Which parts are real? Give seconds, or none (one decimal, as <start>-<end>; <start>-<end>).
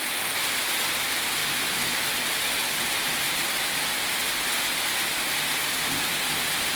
0.0-1.4; 2.1-6.8